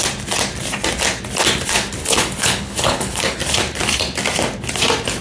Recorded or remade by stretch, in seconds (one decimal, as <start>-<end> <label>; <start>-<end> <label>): 0.0-2.0 recorded; 2.0-3.4 remade; 3.4-5.2 recorded

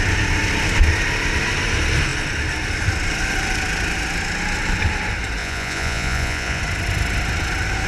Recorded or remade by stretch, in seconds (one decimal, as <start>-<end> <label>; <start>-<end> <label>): 0.0-5.4 recorded; 5.4-6.6 remade; 6.6-7.9 recorded

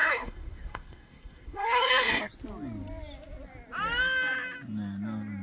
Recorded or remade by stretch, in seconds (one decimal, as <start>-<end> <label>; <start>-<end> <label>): 0.0-2.2 remade; 2.2-5.4 recorded

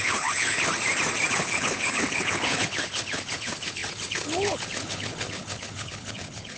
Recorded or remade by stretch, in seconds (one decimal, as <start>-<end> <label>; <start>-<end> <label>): 0.0-0.7 remade; 0.7-1.3 recorded; 1.3-6.6 remade

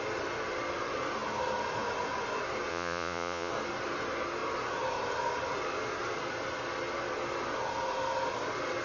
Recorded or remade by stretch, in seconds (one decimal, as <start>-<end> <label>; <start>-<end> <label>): 0.0-2.7 recorded; 2.7-3.5 remade; 3.5-8.8 recorded